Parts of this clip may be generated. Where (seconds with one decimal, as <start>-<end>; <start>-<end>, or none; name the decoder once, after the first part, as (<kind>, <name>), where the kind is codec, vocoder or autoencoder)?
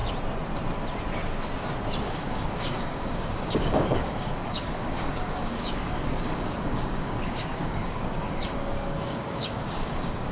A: 2.0-10.3 (codec, DAC)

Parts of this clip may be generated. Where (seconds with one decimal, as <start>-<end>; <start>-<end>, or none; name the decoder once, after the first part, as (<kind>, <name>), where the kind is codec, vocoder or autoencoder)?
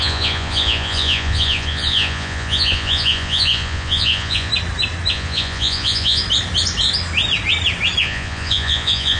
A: 0.0-4.5 (vocoder, Vocos); 5.1-6.2; 8.0-9.2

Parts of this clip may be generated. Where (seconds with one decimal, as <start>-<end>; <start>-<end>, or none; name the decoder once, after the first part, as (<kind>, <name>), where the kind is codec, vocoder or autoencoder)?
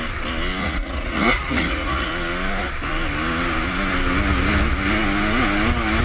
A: 0.6-2.1 (vocoder, Vocos)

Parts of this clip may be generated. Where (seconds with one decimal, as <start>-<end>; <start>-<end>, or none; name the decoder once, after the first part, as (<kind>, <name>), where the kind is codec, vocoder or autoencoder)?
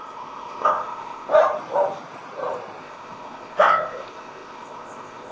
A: 0.0-1.3 (codec, ZipCodec); 2.8-5.3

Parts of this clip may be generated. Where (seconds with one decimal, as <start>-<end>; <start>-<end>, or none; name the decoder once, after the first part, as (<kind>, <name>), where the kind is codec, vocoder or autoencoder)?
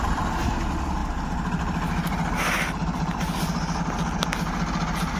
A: none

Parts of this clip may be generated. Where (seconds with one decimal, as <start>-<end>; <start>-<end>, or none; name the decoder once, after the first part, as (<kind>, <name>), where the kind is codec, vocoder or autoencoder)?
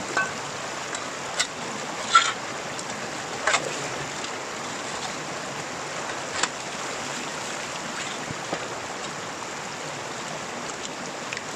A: none